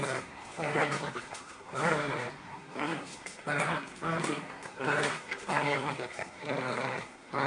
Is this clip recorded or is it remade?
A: remade